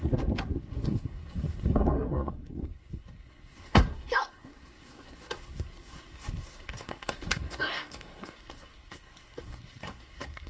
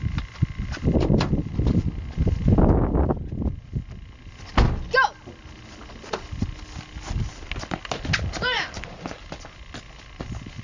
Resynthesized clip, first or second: first